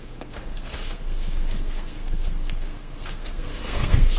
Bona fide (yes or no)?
no